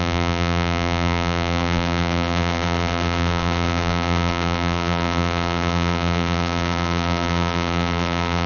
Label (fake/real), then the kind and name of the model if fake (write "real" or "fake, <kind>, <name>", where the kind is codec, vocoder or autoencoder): fake, vocoder, BigVGAN v2